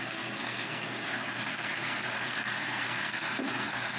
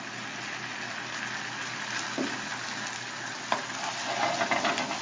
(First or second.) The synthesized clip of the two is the first